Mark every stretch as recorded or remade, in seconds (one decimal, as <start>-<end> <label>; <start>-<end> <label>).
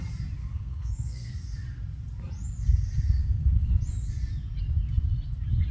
0.0-0.4 recorded; 0.4-1.3 remade; 1.3-3.2 recorded; 3.2-3.7 remade; 3.7-5.7 recorded